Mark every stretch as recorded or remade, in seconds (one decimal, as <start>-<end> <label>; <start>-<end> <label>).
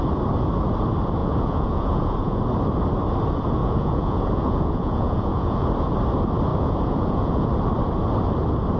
0.0-1.2 recorded; 1.2-2.4 remade; 2.4-3.6 recorded; 3.6-5.7 remade; 5.7-6.5 recorded; 6.5-7.5 remade; 7.5-8.8 recorded